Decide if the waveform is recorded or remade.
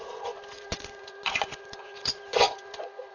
remade